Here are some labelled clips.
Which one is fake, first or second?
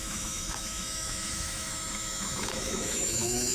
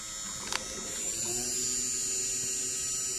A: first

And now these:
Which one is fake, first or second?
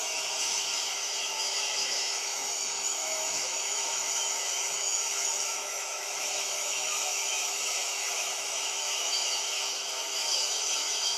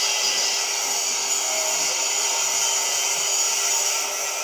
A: first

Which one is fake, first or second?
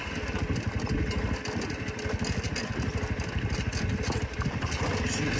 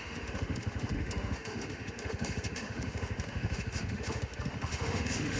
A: second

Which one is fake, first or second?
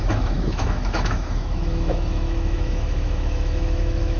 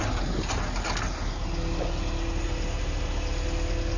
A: first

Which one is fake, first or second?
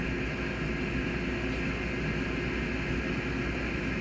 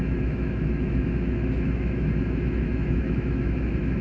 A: second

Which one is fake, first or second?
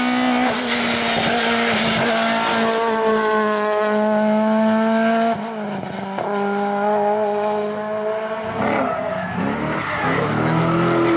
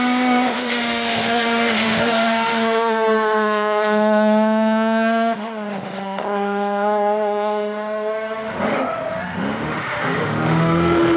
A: second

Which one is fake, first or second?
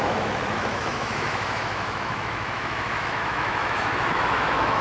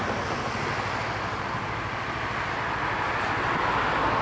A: first